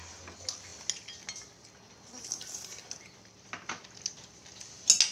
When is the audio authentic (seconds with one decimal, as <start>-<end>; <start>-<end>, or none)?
0.0-5.1